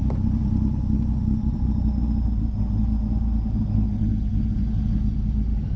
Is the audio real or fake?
real